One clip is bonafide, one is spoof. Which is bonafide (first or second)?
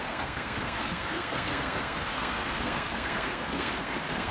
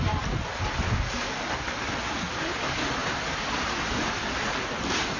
second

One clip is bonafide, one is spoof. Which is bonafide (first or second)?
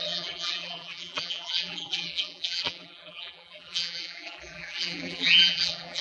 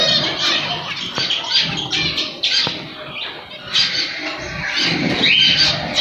second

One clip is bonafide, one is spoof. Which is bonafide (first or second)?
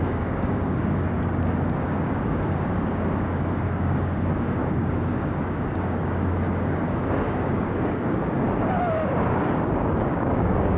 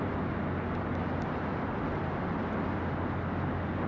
second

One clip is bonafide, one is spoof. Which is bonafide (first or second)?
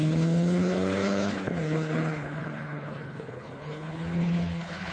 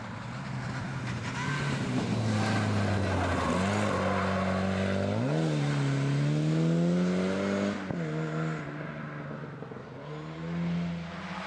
second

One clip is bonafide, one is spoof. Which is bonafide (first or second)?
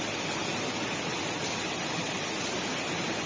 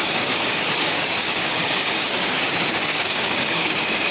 first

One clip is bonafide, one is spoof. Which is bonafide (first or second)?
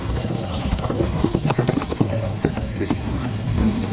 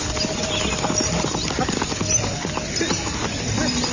second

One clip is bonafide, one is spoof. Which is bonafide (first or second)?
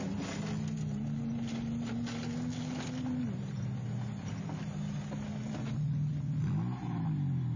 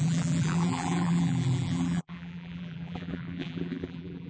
first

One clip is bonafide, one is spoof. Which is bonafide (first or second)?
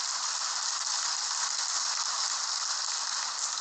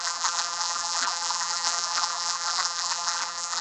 first